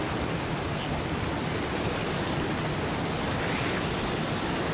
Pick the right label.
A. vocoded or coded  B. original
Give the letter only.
B